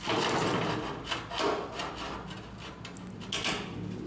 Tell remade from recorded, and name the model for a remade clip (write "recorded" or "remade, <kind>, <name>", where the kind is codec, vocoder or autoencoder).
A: recorded